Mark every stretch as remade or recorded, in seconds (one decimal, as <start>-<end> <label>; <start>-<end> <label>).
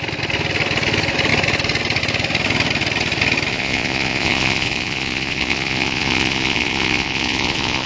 0.0-3.5 recorded; 3.5-7.9 remade